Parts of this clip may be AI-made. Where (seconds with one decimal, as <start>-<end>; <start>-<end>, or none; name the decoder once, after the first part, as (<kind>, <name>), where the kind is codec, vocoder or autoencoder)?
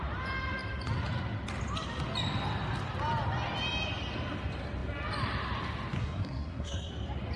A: 6.0-6.9 (codec, SNAC)